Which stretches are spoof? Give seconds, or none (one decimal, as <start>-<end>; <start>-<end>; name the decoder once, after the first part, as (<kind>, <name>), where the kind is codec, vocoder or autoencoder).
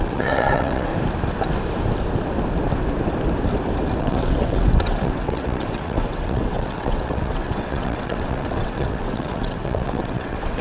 0.0-0.9 (vocoder, WaveNeXt); 4.0-10.6